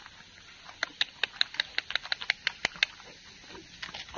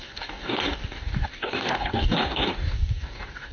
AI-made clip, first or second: second